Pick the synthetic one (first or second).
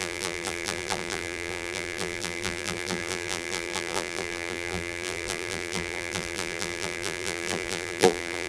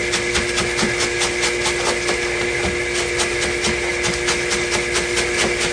first